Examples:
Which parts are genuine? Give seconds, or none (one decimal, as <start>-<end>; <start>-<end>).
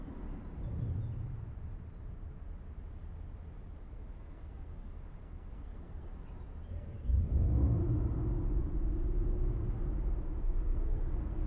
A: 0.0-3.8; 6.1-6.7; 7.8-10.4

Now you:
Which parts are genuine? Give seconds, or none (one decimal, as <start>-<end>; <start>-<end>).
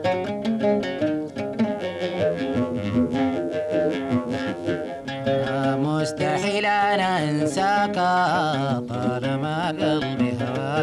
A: 0.0-1.7; 5.0-10.8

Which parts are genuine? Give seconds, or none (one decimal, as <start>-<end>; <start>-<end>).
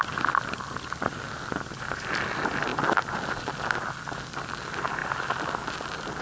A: 0.0-6.2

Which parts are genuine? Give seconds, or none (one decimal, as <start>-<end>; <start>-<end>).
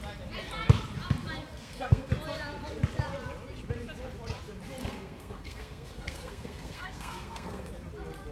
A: 0.0-1.4; 2.1-4.8; 7.7-8.3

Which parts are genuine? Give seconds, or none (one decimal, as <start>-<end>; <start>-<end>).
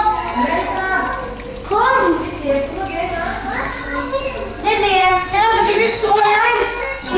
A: 0.0-3.6; 4.2-5.0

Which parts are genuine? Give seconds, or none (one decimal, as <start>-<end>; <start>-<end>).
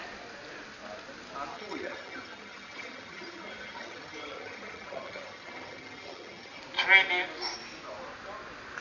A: 0.0-1.5; 6.6-8.8